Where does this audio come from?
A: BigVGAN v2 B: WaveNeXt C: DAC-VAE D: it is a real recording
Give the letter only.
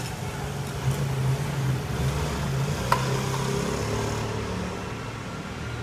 D